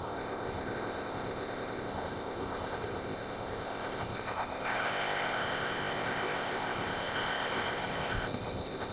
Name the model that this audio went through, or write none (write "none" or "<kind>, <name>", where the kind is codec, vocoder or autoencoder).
codec, ZipCodec